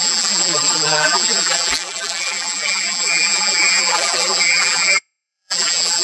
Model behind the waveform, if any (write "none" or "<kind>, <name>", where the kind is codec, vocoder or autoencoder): vocoder, BigVGAN v2